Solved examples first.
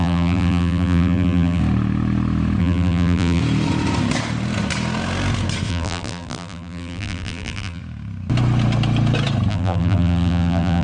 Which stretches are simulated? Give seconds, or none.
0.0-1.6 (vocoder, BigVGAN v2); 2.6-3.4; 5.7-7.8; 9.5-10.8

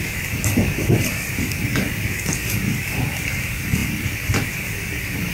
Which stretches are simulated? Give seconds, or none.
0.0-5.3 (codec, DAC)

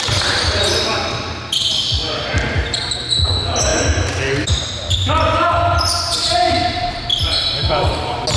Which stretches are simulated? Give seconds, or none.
none